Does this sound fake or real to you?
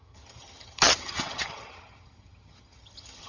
fake